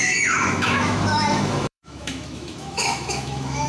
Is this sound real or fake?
fake